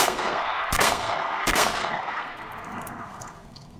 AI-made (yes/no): yes